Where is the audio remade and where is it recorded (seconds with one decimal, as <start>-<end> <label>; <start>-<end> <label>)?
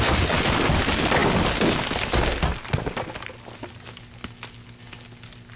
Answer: 0.0-5.6 recorded